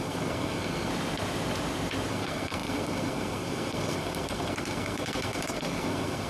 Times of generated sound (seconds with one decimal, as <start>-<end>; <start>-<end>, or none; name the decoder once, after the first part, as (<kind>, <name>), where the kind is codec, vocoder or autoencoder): 0.0-0.9 (codec, SNAC); 2.1-6.3